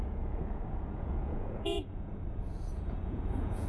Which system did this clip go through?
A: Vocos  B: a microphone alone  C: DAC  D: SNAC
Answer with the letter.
A